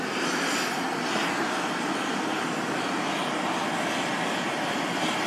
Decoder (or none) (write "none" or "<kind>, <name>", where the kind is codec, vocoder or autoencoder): none